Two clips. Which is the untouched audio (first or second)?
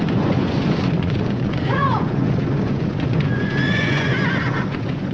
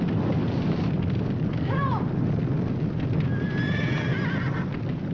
second